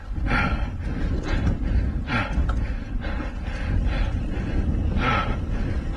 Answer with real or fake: real